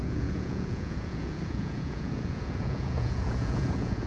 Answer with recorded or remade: remade